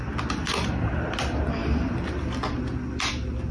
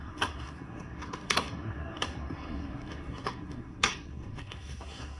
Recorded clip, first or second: first